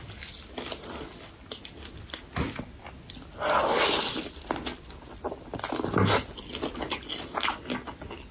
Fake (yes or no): no